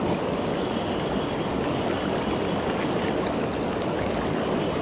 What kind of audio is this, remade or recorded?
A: recorded